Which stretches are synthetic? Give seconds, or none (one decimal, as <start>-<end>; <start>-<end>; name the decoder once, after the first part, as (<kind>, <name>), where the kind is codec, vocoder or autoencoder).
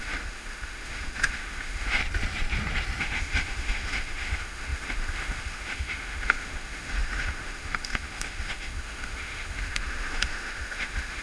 0.0-2.0 (autoencoder, DAC-VAE); 3.0-11.2